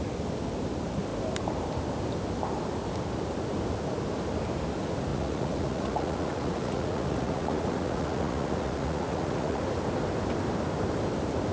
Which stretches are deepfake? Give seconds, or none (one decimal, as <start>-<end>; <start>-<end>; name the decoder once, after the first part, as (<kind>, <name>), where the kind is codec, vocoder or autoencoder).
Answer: 5.1-9.6 (vocoder, Vocos)